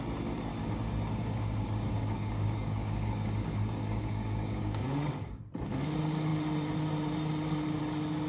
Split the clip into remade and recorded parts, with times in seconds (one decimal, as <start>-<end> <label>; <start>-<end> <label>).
0.0-0.5 recorded; 0.5-5.5 remade; 5.5-8.3 recorded